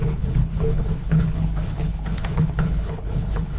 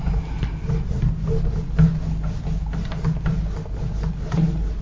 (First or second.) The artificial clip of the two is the first